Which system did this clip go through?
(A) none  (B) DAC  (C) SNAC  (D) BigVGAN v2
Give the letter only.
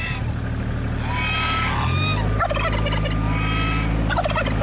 A